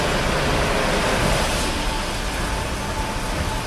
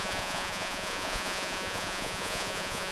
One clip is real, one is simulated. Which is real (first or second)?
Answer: first